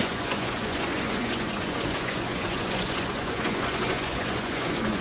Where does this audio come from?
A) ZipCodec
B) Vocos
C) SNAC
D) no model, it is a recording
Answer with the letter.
B